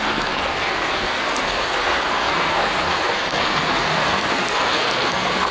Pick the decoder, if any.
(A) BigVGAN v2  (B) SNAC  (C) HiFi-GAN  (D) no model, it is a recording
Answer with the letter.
B